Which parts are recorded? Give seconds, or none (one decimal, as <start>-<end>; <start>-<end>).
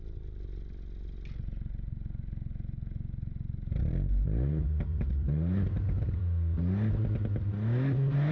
0.0-2.5; 6.2-8.3